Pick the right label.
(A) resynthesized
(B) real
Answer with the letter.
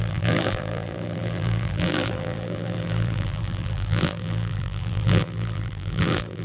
A